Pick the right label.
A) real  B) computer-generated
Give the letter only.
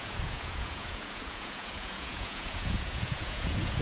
B